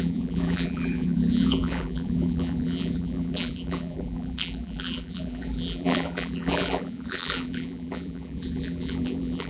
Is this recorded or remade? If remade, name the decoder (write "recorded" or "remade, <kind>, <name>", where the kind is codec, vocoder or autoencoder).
remade, vocoder, BigVGAN v2